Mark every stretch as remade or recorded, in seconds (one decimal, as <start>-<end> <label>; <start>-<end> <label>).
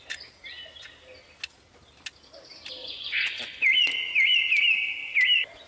0.0-2.8 recorded; 2.8-3.6 remade; 3.6-5.7 recorded